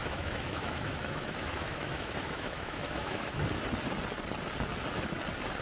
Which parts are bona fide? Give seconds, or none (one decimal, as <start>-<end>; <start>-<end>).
3.4-5.6